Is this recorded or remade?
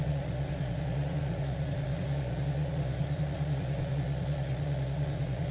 remade